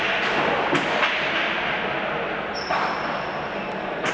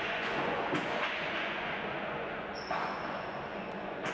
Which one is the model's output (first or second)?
second